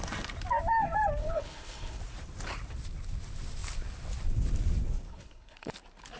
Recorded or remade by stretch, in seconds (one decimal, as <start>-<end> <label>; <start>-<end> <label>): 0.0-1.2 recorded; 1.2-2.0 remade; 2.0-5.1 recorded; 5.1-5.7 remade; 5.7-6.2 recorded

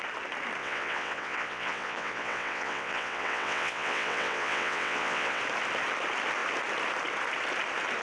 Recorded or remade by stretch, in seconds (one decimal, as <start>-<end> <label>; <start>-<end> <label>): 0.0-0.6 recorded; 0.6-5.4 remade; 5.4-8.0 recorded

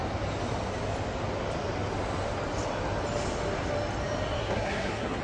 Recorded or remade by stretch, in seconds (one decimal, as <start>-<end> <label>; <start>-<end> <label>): 0.0-4.4 recorded; 4.4-5.2 remade

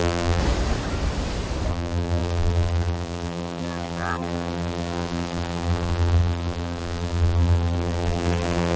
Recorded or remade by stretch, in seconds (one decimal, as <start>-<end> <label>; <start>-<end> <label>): 0.0-0.4 remade; 0.4-1.7 recorded; 1.7-8.8 remade

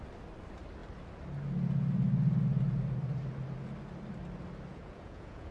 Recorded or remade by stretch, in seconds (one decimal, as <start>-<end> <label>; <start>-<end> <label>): 0.0-4.7 recorded; 4.7-5.5 remade